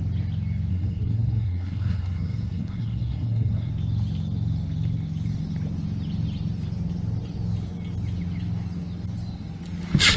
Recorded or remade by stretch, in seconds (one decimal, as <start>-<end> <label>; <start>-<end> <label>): 0.0-0.7 recorded; 0.7-3.7 remade; 3.7-10.2 recorded